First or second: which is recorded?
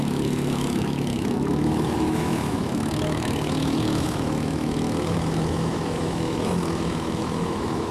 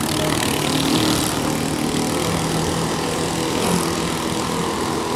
second